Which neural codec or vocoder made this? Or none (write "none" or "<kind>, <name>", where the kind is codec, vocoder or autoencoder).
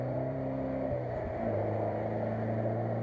vocoder, BigVGAN v2